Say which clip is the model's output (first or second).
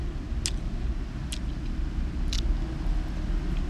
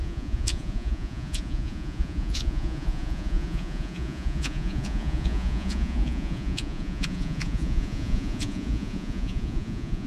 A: second